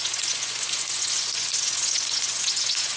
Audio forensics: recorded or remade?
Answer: remade